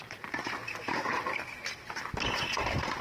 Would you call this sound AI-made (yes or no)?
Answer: yes